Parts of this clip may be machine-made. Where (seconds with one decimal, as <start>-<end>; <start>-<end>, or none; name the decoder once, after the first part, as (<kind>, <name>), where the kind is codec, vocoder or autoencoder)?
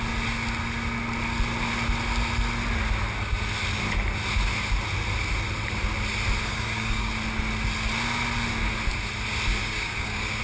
6.5-7.1 (codec, DAC); 9.6-10.4